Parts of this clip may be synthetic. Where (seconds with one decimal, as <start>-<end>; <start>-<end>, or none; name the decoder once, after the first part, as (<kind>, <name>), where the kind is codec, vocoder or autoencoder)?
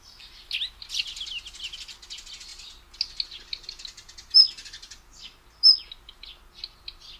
none